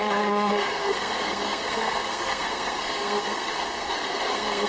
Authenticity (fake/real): fake